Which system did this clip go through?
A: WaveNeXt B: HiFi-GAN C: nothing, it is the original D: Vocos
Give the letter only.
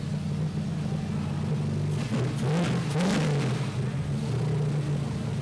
C